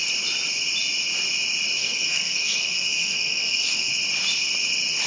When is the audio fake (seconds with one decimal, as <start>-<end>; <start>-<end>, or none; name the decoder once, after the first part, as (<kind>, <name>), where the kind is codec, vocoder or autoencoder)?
1.8-3.9 (codec, SNAC)